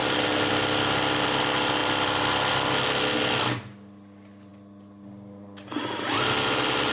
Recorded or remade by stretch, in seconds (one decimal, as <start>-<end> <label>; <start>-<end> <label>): 0.0-6.9 recorded